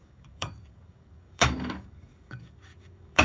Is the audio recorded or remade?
remade